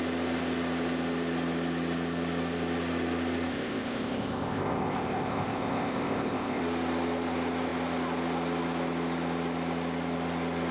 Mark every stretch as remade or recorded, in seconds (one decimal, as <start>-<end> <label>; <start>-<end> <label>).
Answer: 0.0-3.5 recorded; 3.5-6.6 remade; 6.6-10.7 recorded